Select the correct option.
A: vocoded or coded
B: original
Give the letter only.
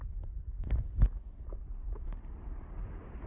B